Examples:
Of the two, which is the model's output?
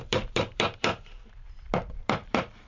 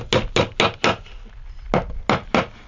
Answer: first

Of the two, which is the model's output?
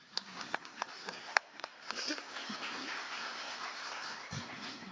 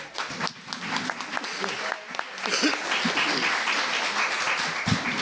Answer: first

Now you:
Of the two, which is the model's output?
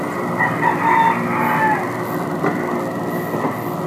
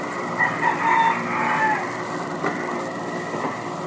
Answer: second